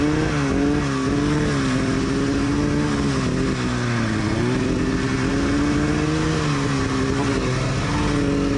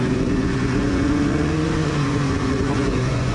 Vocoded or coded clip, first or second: second